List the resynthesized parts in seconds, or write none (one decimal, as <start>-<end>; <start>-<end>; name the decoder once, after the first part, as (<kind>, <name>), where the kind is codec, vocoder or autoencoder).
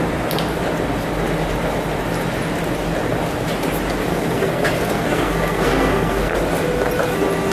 4.1-6.3 (codec, SNAC)